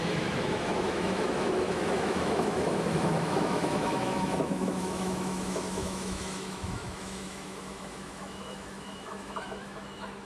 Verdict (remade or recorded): remade